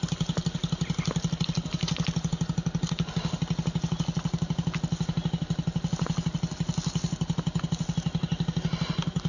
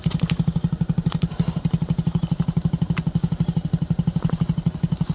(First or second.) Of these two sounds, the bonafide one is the first